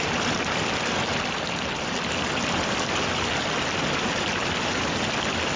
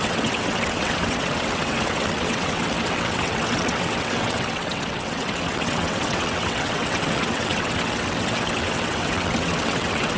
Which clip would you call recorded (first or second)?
first